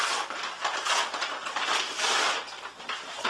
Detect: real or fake fake